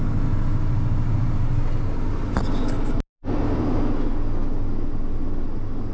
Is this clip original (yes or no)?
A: yes